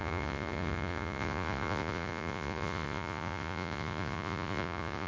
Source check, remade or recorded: remade